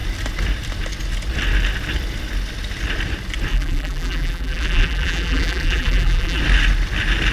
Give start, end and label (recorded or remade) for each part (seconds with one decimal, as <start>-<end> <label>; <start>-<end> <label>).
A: 0.0-3.5 recorded; 3.5-6.4 remade; 6.4-7.3 recorded